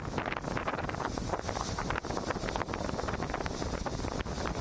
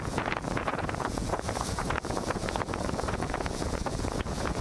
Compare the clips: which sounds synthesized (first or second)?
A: second